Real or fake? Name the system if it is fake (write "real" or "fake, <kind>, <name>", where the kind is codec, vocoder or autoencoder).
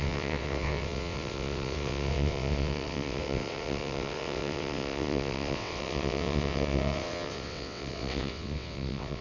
fake, vocoder, WaveNeXt